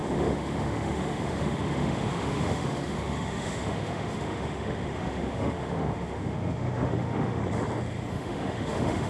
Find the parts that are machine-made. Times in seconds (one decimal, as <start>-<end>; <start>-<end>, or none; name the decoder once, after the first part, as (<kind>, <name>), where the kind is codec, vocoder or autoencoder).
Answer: 0.0-7.4 (autoencoder, DAC-VAE); 8.1-9.1